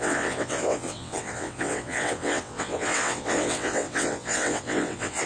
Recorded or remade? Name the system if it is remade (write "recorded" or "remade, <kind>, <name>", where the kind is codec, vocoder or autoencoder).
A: remade, vocoder, WaveNeXt